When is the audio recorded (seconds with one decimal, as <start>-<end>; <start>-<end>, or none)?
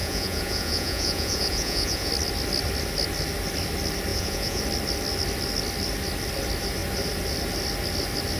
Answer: 2.1-4.1; 4.6-8.4